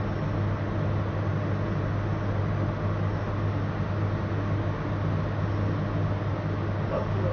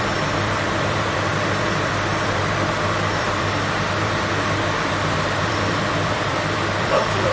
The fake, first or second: second